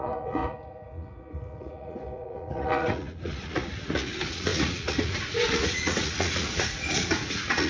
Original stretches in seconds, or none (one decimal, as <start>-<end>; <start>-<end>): none